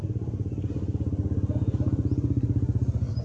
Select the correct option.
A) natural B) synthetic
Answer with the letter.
A